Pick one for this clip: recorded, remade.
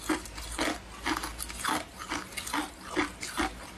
recorded